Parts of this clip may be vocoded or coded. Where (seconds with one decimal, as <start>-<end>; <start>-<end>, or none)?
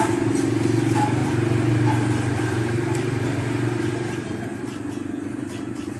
none